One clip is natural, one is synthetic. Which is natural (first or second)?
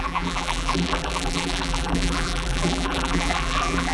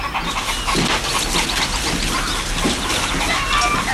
second